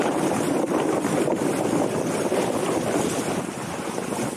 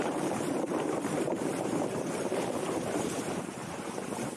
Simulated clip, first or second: second